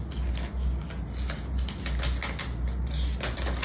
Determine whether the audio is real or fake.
real